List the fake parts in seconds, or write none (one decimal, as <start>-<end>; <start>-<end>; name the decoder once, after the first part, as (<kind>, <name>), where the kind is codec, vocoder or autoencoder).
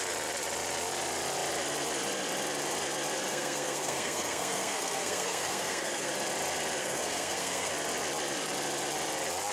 3.3-6.1 (codec, SNAC); 6.8-7.7